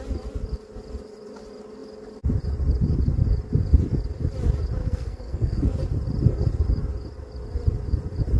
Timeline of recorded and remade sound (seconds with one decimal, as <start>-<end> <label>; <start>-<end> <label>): 0.0-4.8 recorded; 4.8-5.8 remade; 5.8-8.4 recorded